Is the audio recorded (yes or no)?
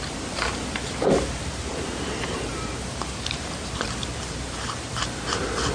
no